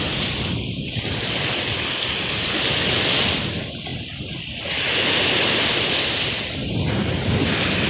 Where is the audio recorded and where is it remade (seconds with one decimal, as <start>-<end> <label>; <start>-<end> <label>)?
0.0-6.6 recorded; 6.6-7.5 remade; 7.5-7.9 recorded